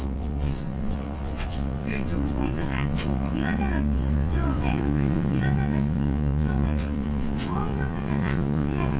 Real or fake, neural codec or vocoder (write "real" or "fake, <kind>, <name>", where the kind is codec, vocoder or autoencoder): fake, vocoder, WaveNeXt